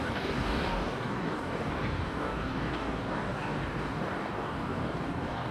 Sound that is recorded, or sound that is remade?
remade